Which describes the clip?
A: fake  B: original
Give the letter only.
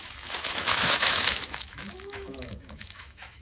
A